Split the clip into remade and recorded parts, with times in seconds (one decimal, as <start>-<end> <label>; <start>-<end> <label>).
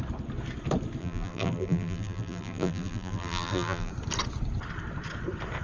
0.0-1.0 recorded; 1.0-3.9 remade; 3.9-5.6 recorded